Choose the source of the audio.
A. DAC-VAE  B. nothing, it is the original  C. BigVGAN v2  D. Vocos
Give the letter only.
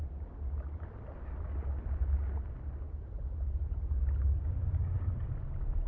B